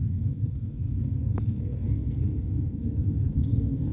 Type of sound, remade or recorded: remade